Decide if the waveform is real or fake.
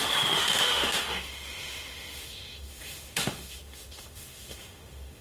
fake